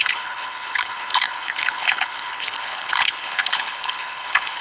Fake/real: fake